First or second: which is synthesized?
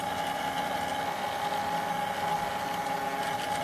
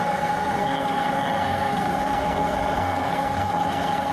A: second